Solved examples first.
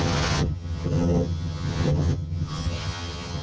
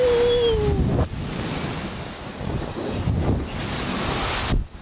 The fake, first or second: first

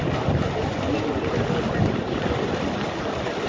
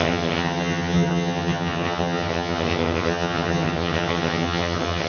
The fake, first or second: second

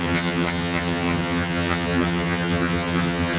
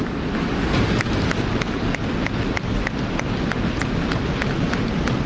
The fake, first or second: first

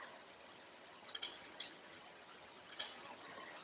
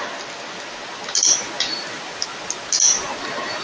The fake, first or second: first